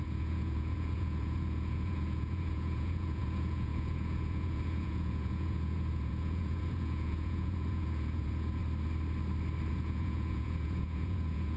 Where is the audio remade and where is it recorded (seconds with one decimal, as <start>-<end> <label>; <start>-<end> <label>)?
0.0-8.6 remade; 8.6-9.7 recorded; 9.7-11.6 remade